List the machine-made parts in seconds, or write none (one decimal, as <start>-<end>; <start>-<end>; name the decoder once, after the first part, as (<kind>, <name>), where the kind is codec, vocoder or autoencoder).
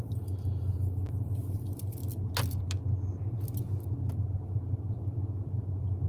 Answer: none